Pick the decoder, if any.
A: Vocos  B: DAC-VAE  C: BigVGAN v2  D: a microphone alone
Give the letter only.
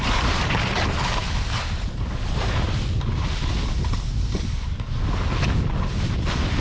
D